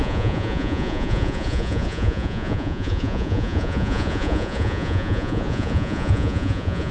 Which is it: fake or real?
fake